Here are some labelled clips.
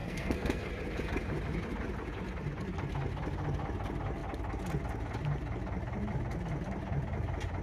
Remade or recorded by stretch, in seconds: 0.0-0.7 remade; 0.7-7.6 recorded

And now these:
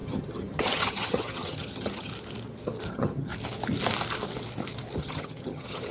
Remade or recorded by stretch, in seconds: 0.0-2.1 remade; 2.1-2.9 recorded; 2.9-3.3 remade; 3.3-5.0 recorded; 5.0-5.9 remade

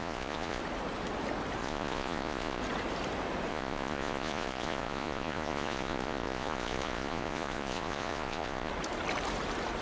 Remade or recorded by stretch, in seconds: 0.0-0.6 remade; 0.6-1.6 recorded; 1.6-2.6 remade; 2.6-3.5 recorded; 3.5-8.7 remade; 8.7-9.8 recorded

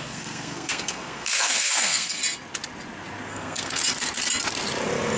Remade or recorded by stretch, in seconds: 0.0-2.2 remade; 2.2-3.3 recorded; 3.3-3.8 remade; 3.8-5.2 recorded

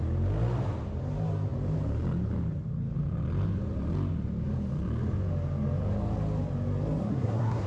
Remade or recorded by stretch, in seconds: 0.0-7.0 recorded; 7.0-7.7 remade

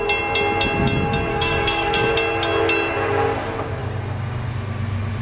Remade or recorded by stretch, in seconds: 0.0-1.3 recorded; 1.3-2.1 remade; 2.1-3.8 recorded; 3.8-4.5 remade; 4.5-5.2 recorded

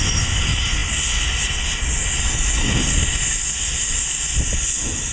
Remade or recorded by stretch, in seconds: 0.0-5.1 recorded